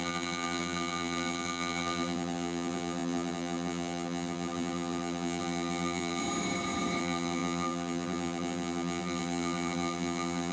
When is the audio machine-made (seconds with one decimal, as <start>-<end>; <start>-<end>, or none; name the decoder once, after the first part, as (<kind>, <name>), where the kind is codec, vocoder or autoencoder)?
0.0-6.2 (vocoder, BigVGAN v2); 7.0-10.5